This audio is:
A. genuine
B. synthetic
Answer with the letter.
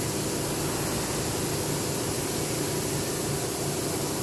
A